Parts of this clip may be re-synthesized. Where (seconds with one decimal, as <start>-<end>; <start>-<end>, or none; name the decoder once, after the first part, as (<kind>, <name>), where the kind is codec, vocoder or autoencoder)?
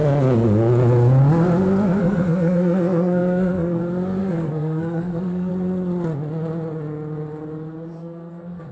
2.0-3.8 (codec, SNAC); 4.2-5.5; 8.0-8.7